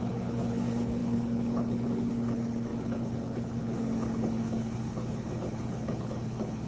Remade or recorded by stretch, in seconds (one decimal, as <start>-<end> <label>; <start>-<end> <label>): 0.0-6.7 remade